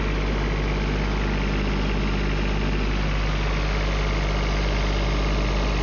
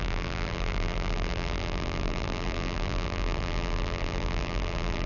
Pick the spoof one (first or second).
second